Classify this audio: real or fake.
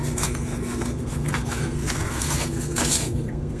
fake